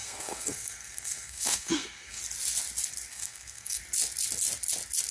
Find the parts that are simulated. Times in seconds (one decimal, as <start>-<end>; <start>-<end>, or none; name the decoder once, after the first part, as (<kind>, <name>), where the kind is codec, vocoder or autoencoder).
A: 0.0-2.2 (codec, SNAC); 3.1-3.8